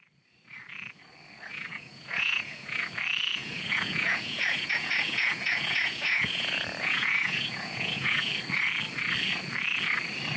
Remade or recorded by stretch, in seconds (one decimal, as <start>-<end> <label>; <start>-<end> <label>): 0.0-1.5 recorded; 1.5-2.9 remade; 2.9-3.4 recorded; 3.4-8.3 remade; 8.3-10.4 recorded